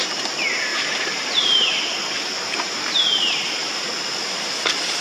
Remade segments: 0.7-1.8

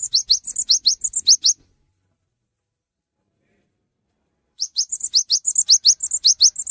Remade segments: 1.9-4.9

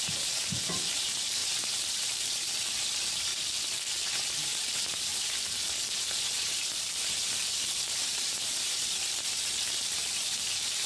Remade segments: 0.0-3.3; 4.0-5.1; 6.2-10.9

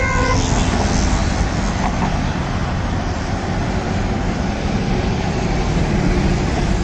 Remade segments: 1.2-2.2; 2.6-5.9

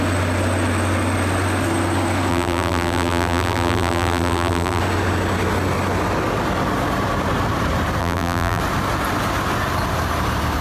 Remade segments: 2.3-4.8; 8.0-8.6

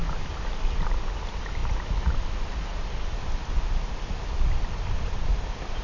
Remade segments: 0.0-5.8